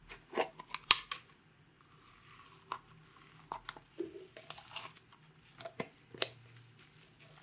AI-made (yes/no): no